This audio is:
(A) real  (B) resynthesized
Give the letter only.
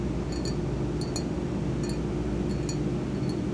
A